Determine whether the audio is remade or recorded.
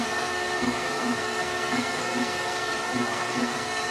remade